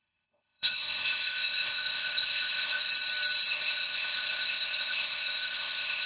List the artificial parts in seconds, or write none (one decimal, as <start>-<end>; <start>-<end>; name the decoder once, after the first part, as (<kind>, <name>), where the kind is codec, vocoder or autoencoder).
0.0-2.9 (codec, ZipCodec); 3.5-6.1